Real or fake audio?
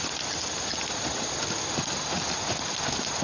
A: real